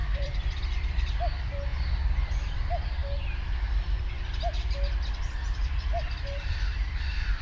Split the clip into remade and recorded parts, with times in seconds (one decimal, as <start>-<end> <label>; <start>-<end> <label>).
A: 0.0-1.7 remade; 1.7-2.4 recorded; 2.4-3.0 remade; 3.0-5.2 recorded; 5.2-7.4 remade